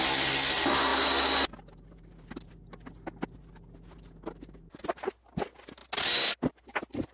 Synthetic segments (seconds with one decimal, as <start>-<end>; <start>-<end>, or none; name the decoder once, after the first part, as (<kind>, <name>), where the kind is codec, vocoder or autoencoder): none